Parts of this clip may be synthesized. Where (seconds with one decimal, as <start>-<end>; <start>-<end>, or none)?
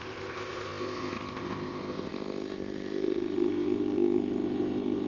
0.0-5.1